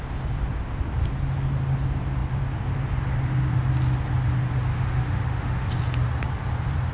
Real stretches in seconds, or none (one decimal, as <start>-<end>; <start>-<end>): 0.0-4.7; 5.7-6.9